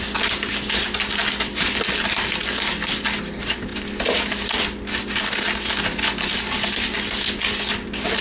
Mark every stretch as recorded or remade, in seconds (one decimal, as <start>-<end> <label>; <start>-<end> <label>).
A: 0.0-8.2 recorded